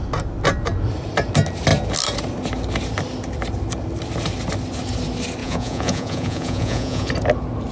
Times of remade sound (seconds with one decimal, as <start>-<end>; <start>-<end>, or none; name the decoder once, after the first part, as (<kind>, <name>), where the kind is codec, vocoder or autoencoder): 5.4-7.1 (vocoder, Vocos)